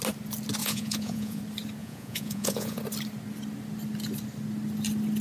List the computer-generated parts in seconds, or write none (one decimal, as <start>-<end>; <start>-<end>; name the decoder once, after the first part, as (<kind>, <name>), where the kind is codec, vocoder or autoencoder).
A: 0.6-1.4 (vocoder, Vocos); 1.8-2.8